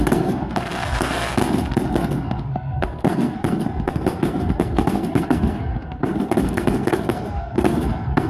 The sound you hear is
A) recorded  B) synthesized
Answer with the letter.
B